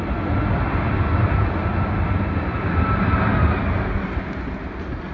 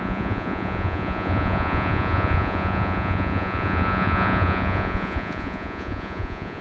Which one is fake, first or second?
second